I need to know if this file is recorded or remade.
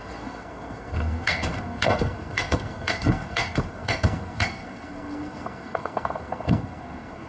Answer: remade